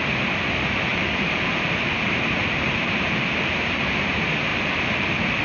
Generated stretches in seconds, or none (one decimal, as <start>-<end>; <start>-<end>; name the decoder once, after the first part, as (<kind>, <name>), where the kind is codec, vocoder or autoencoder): 0.9-4.1 (vocoder, BigVGAN v2); 4.5-5.4